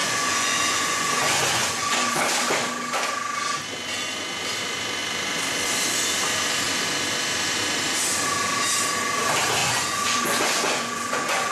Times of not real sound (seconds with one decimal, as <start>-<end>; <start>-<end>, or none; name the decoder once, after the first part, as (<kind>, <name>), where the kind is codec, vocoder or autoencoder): 0.0-2.2 (vocoder, Vocos); 9.6-11.5